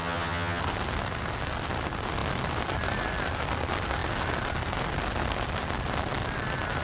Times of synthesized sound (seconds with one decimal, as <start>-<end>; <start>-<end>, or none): 0.0-0.6